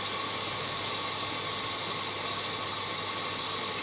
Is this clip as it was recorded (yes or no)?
yes